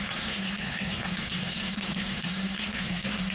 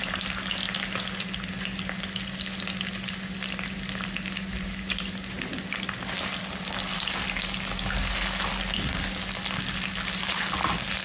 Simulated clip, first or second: first